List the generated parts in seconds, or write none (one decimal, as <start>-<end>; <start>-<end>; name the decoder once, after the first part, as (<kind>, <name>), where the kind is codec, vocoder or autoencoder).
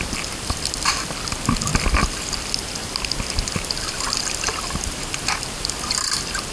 none